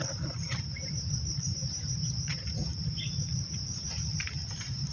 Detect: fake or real fake